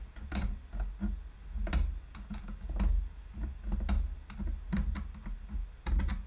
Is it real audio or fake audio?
real